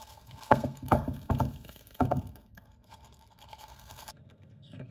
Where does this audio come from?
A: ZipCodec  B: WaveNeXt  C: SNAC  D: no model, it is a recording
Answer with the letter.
C